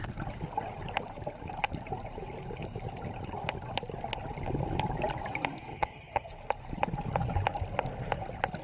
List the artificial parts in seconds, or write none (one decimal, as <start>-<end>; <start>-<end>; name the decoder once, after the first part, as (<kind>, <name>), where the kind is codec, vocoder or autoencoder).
5.7-6.3 (vocoder, HiFi-GAN)